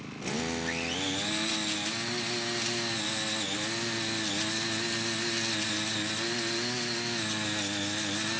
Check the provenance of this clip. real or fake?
real